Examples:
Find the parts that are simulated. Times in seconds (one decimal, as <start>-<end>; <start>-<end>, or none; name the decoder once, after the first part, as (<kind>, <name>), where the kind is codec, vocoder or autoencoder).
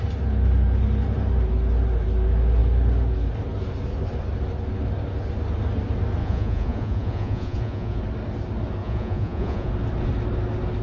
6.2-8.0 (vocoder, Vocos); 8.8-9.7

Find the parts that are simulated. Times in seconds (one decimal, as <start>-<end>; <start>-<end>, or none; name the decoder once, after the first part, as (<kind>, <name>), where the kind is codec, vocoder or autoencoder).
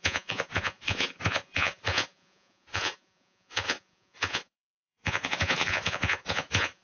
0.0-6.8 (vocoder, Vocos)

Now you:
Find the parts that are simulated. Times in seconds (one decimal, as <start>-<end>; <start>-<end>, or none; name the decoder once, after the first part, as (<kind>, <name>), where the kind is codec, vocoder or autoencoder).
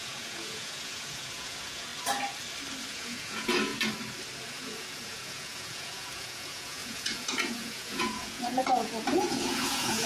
0.0-1.9 (vocoder, Vocos); 2.9-3.7; 4.4-10.1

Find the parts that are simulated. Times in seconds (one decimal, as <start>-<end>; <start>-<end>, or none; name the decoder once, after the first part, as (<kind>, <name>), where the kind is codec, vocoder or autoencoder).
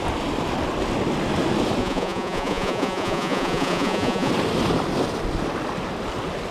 1.8-4.3 (vocoder, Vocos)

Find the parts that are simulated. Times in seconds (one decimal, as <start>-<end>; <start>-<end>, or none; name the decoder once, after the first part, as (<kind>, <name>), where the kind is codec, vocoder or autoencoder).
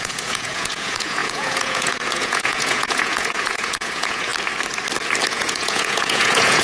0.0-4.3 (vocoder, Vocos); 5.3-6.6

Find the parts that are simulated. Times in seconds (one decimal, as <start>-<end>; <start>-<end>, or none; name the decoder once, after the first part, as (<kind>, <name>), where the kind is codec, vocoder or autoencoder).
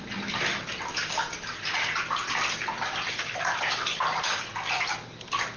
none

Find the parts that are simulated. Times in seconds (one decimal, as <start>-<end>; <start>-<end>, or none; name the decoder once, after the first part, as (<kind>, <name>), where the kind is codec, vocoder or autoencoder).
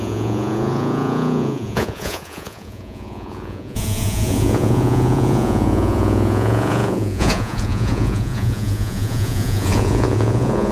0.0-10.7 (vocoder, Vocos)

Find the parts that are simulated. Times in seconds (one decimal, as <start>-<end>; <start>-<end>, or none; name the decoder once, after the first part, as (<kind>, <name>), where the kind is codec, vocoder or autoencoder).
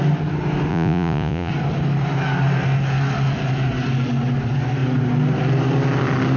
0.7-1.5 (vocoder, Vocos)